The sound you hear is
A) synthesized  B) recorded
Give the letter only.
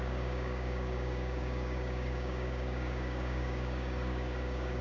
A